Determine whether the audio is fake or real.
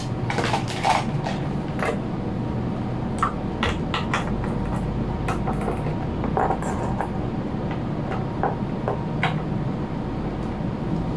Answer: real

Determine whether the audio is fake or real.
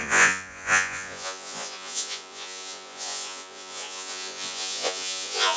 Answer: fake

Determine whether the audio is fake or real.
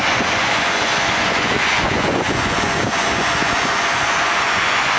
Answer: fake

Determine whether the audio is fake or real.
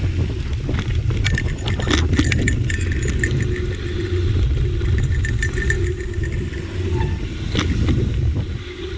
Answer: real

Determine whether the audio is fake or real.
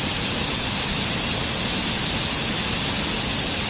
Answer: real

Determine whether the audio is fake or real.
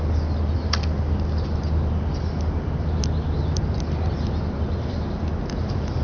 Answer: real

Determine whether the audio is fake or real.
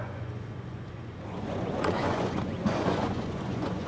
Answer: fake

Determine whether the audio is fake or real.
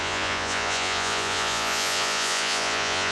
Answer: fake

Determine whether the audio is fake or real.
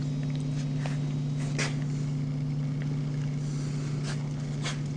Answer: real